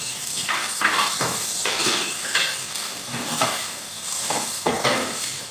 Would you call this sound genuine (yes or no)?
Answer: no